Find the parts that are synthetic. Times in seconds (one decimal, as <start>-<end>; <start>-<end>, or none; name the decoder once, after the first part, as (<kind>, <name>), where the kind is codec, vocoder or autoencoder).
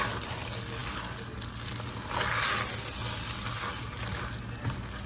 none